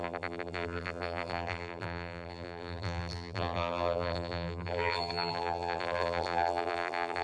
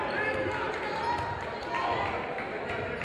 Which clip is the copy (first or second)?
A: first